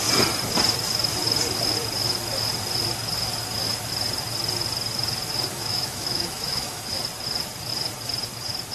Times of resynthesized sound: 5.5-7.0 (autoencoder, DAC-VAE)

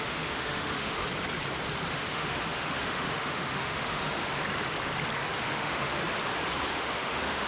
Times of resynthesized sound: 0.0-1.0 (autoencoder, DAC-VAE); 1.9-4.4; 5.4-6.0; 6.7-7.5

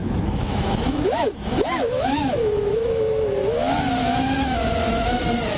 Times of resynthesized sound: 0.0-5.6 (autoencoder, DAC-VAE)

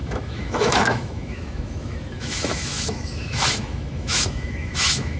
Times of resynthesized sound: 0.0-5.2 (autoencoder, DAC-VAE)

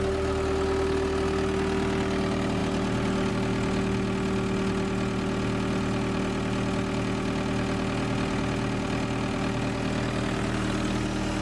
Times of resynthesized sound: none

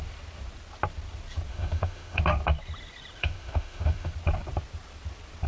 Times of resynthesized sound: 1.5-2.2 (autoencoder, DAC-VAE); 3.2-4.1

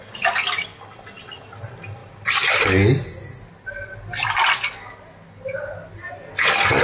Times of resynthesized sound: none

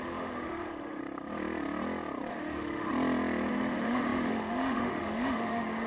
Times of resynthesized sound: 0.0-1.0 (autoencoder, DAC-VAE); 2.3-2.9; 3.5-5.9